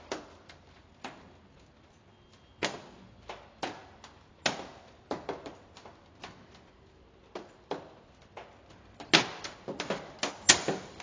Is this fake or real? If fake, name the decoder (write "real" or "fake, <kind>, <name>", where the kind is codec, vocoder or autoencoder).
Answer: real